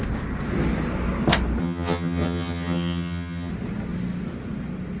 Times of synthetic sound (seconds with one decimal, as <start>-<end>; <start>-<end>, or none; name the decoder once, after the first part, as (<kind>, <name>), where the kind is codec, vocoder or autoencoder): 1.6-3.5 (vocoder, HiFi-GAN)